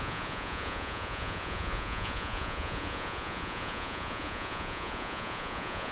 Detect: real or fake fake